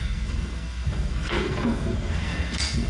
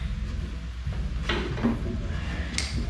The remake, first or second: first